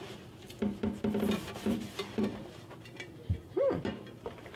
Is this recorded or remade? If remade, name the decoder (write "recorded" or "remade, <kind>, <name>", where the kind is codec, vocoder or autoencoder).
remade, vocoder, BigVGAN v2